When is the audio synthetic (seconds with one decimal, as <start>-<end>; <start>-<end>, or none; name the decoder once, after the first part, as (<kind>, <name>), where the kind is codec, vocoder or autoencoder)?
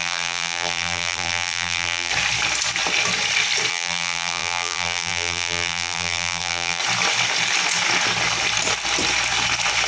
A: 0.0-2.1 (vocoder, BigVGAN v2); 3.7-6.8